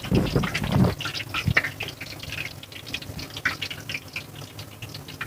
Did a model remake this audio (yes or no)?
no